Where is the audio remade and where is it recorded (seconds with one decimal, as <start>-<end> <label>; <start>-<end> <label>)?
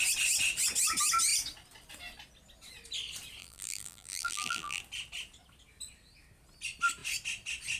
0.0-3.4 recorded; 3.4-4.8 remade; 4.8-7.8 recorded